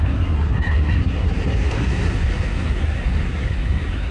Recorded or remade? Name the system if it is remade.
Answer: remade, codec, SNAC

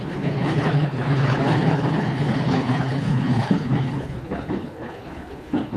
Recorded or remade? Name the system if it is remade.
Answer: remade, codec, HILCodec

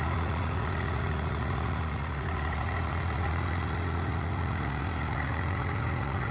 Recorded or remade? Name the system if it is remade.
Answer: remade, vocoder, Vocos